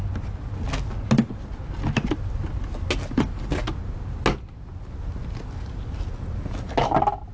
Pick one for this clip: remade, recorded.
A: recorded